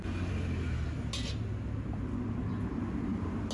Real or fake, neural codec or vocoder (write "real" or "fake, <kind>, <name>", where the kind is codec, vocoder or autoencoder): real